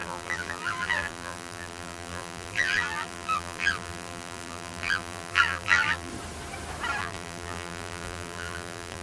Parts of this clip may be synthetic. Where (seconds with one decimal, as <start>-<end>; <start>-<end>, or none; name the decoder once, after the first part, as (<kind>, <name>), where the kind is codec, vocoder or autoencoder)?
0.0-6.1 (vocoder, BigVGAN v2); 7.0-9.0